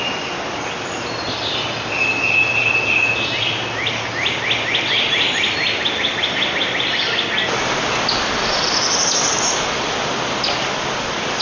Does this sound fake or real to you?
real